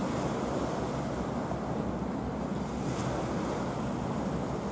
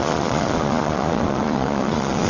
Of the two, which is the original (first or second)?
first